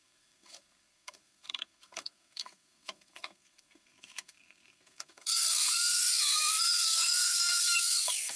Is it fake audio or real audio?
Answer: fake